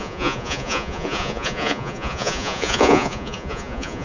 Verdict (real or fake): fake